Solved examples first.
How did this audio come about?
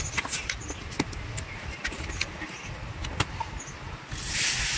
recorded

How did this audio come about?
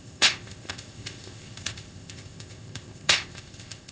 remade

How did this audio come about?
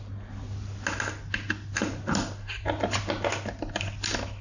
recorded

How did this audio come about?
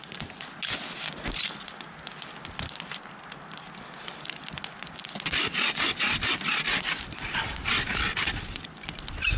recorded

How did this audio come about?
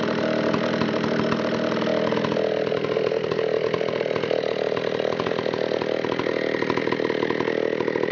recorded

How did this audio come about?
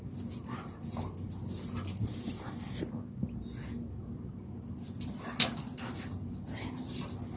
recorded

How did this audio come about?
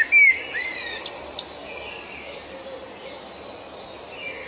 recorded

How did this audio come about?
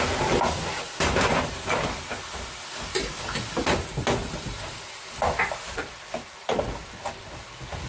recorded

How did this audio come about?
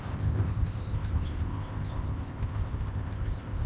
remade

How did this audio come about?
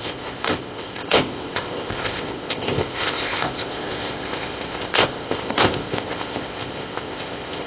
remade